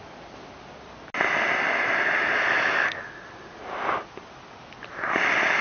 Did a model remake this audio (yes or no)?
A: no